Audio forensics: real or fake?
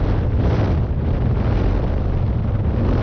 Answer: real